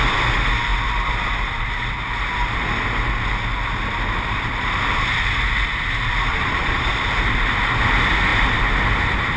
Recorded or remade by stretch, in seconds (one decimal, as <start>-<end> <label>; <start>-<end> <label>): 0.0-6.3 recorded; 6.3-6.9 remade; 6.9-9.4 recorded